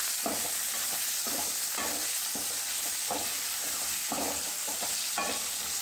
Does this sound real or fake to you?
real